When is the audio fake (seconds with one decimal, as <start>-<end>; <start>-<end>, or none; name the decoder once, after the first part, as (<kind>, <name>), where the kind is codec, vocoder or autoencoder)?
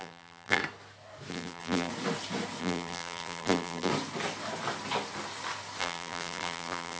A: 0.0-0.6 (vocoder, BigVGAN v2); 1.3-1.9; 2.6-3.9; 5.8-7.0